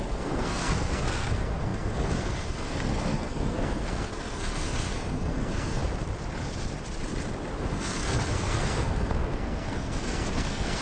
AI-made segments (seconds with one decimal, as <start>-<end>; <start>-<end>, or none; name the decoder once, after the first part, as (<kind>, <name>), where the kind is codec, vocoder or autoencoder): 0.0-5.8 (codec, SNAC); 7.7-10.8